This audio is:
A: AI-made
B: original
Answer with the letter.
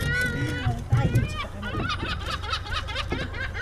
B